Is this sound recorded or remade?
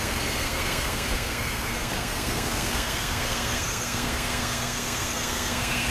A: remade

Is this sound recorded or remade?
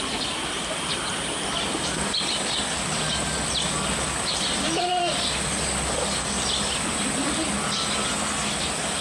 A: recorded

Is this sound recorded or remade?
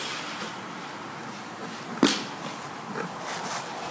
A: recorded